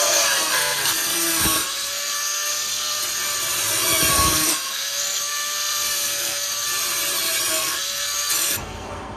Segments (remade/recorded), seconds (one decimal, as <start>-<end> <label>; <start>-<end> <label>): 0.0-3.0 remade; 3.0-4.1 recorded; 4.1-6.7 remade; 6.7-7.5 recorded; 7.5-9.2 remade